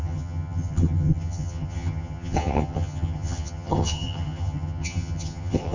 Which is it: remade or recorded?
remade